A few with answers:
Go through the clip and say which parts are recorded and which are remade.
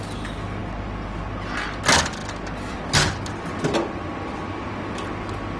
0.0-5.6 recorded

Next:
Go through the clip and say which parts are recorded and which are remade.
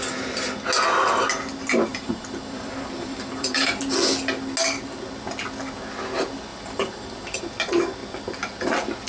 0.0-1.9 recorded; 1.9-3.8 remade; 3.8-6.5 recorded; 6.5-7.4 remade; 7.4-9.1 recorded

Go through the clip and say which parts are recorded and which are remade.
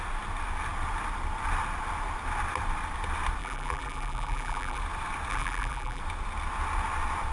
0.0-3.4 recorded; 3.4-4.8 remade; 4.8-5.3 recorded; 5.3-6.0 remade; 6.0-7.3 recorded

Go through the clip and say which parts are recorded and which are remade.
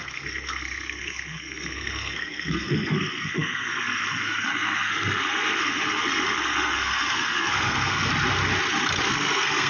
0.0-8.1 remade; 8.1-9.1 recorded; 9.1-9.7 remade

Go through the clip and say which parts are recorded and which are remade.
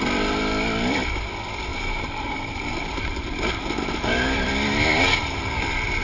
0.0-1.7 recorded; 1.7-4.5 remade; 4.5-5.2 recorded; 5.2-6.0 remade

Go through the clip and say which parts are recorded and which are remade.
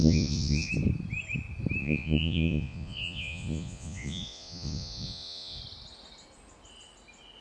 0.0-0.7 remade; 0.7-1.8 recorded; 1.8-5.6 remade; 5.6-7.4 recorded